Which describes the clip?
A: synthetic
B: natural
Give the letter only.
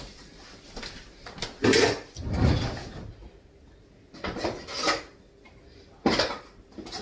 B